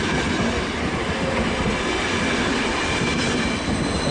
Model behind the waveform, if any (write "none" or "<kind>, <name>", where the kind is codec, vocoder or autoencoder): none